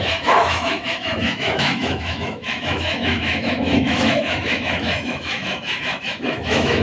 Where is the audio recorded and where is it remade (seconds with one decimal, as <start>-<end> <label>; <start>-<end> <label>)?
0.0-6.8 remade